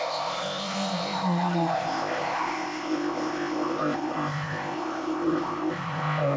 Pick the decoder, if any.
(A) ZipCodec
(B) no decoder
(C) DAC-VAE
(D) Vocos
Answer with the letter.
A